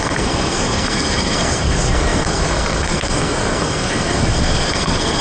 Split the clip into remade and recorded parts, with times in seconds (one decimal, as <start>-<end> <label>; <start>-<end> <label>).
0.0-5.2 remade